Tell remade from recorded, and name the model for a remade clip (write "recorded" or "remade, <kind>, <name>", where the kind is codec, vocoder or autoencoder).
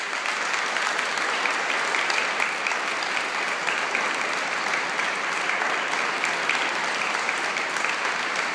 recorded